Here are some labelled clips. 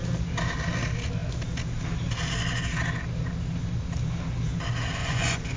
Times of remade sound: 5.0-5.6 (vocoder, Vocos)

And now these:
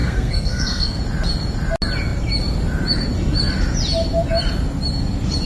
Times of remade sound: 0.0-1.0 (codec, SNAC)

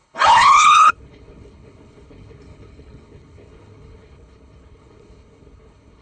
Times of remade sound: 0.0-6.0 (codec, HILCodec)

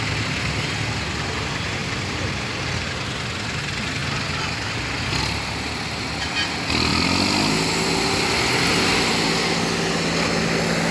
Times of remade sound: 1.8-2.6 (vocoder, BigVGAN v2)

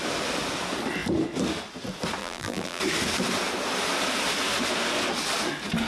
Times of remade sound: 2.2-2.8 (vocoder, BigVGAN v2)

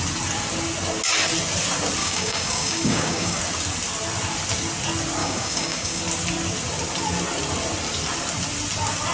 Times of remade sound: 2.0-3.4 (codec, DAC); 5.2-6.0

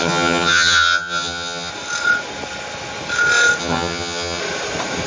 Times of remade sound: 0.0-1.7 (vocoder, HiFi-GAN); 3.6-4.4

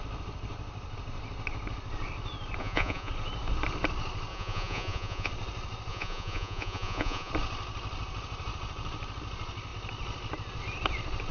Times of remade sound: 2.6-3.1 (vocoder, Vocos); 4.3-5.3; 5.9-7.3